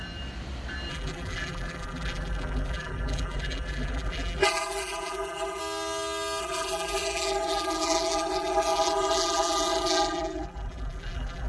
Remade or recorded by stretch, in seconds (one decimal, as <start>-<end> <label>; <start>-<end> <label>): 0.0-0.9 recorded; 0.9-5.6 remade; 5.6-6.4 recorded; 6.4-11.5 remade